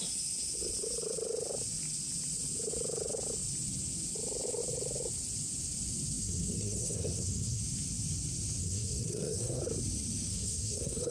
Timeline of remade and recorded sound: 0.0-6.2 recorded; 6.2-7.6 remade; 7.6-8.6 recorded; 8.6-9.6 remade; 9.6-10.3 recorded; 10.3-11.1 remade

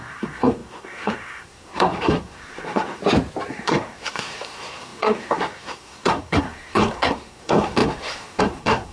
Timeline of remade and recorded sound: 0.0-3.0 remade; 3.0-3.5 recorded; 3.5-8.9 remade

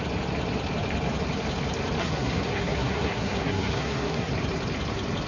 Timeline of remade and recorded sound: 0.0-2.0 recorded; 2.0-4.3 remade; 4.3-5.3 recorded

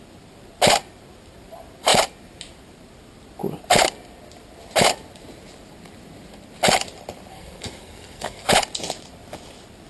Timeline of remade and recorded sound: 0.0-7.3 recorded; 7.3-8.5 remade; 8.5-9.9 recorded

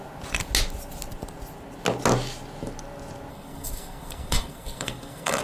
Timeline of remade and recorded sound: 0.0-3.3 recorded; 3.3-5.4 remade